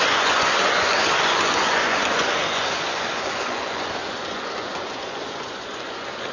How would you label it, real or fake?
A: fake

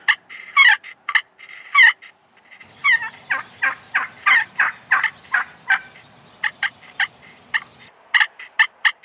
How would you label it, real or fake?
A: real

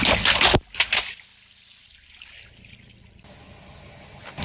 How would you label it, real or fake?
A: real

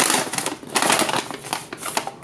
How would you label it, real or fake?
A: real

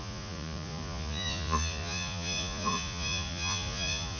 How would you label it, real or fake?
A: fake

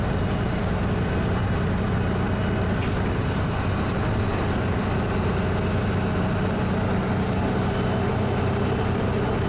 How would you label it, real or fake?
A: real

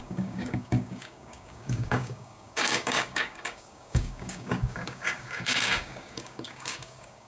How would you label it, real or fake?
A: fake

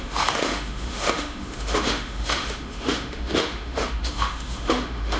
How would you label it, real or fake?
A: fake